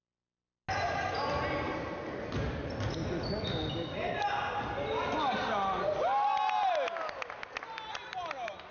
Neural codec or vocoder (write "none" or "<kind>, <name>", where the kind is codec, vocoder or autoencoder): none